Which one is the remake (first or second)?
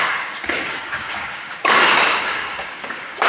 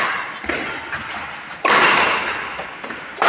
first